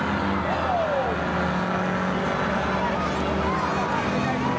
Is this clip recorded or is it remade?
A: recorded